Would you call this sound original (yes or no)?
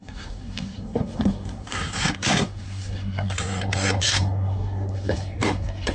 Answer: no